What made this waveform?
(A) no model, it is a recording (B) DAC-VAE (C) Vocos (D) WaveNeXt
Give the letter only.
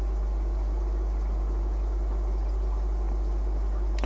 A